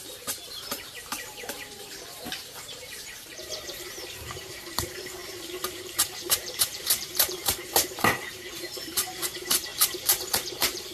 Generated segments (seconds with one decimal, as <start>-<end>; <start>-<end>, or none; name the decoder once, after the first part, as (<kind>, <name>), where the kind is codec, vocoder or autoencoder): 0.0-10.9 (vocoder, BigVGAN v2)